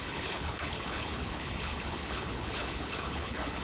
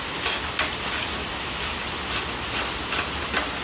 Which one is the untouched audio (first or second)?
second